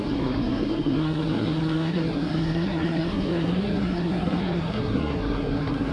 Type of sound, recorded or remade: remade